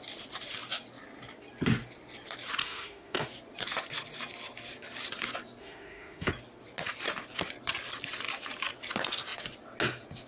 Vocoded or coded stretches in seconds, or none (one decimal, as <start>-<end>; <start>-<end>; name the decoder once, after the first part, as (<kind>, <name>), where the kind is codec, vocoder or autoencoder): 2.6-3.3 (autoencoder, DAC-VAE); 5.6-6.3